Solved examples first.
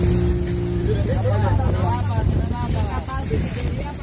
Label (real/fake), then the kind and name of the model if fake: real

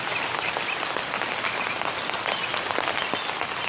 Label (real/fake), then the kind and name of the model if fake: real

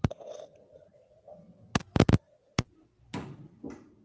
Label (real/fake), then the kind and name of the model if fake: real